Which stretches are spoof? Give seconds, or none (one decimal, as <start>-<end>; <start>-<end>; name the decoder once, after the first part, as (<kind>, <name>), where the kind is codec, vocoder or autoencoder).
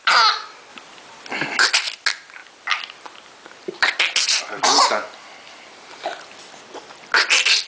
2.4-6.5 (vocoder, BigVGAN v2)